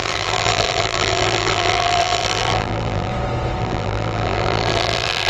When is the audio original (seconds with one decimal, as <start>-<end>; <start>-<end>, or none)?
3.1-3.6